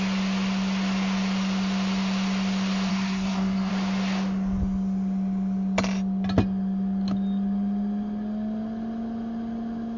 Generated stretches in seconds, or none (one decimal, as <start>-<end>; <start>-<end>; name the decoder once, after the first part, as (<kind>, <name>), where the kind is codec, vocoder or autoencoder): 2.9-3.7 (codec, SNAC)